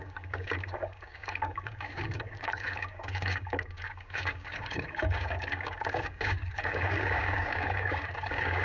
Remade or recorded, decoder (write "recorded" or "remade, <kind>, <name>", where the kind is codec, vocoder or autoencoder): remade, codec, DAC